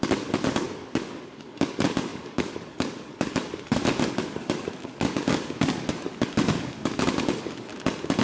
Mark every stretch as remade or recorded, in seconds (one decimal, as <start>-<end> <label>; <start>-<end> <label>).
0.0-7.7 remade; 7.7-8.2 recorded